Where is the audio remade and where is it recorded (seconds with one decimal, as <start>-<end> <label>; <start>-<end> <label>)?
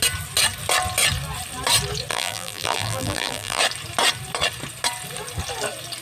0.0-2.1 recorded; 2.1-3.6 remade; 3.6-6.0 recorded